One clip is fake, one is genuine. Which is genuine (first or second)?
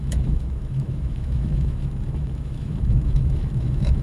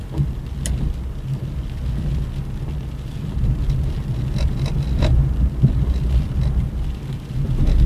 second